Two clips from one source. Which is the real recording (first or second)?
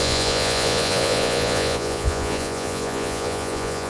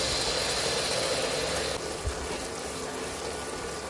second